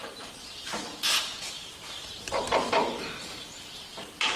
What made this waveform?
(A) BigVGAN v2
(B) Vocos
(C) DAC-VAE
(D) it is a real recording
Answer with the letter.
A